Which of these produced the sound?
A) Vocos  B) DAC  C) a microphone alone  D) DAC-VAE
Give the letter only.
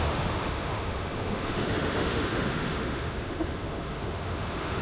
D